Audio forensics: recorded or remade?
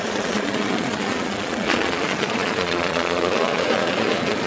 remade